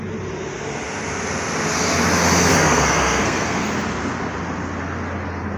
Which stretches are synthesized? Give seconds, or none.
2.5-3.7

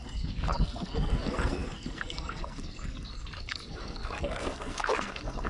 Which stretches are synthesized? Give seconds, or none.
0.0-5.5

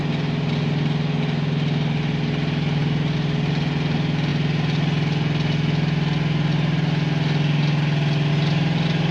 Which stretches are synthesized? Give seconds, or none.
none

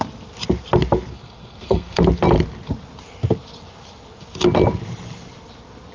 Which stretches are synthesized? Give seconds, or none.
1.1-2.0

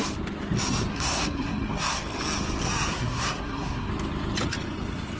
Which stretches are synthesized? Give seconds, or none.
0.9-2.0; 2.9-3.9